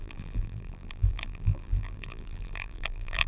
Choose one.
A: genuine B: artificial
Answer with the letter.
B